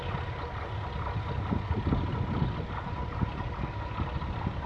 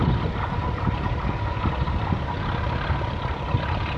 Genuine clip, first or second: first